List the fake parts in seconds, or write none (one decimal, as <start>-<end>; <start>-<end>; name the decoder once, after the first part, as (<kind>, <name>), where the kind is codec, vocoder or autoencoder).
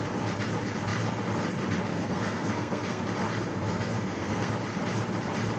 1.9-3.0 (codec, SNAC); 3.5-4.5